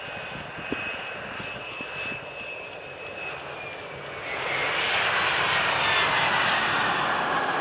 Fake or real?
real